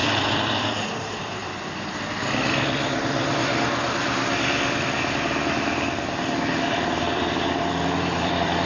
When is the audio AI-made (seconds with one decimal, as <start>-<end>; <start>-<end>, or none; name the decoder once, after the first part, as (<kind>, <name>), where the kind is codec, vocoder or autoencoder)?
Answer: 0.0-1.4 (vocoder, BigVGAN v2); 6.6-8.7